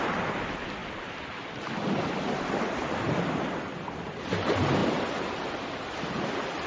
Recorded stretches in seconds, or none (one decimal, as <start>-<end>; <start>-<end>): 0.0-6.7